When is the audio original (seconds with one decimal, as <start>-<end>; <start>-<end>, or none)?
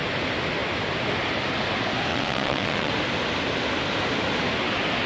0.0-2.1; 2.9-5.1